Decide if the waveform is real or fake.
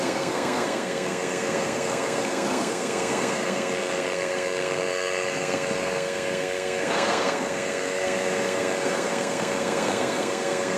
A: fake